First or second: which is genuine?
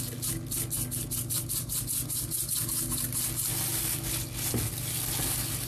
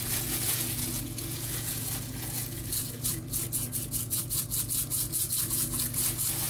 first